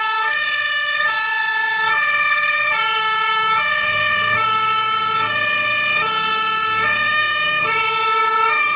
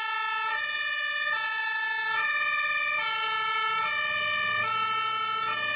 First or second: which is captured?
second